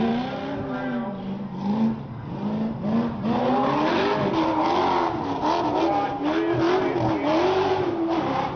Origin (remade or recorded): recorded